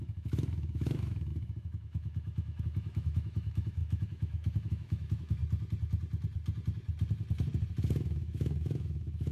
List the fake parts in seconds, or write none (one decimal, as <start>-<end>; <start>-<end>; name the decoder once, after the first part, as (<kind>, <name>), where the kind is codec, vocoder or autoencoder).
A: 0.0-5.4 (autoencoder, DAC-VAE); 7.8-9.3